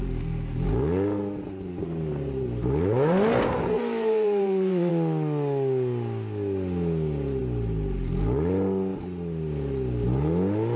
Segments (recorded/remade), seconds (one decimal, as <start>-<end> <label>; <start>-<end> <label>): 0.0-1.8 recorded; 1.8-4.9 remade; 4.9-10.8 recorded